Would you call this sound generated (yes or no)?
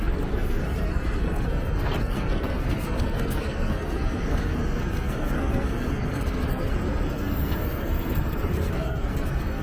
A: yes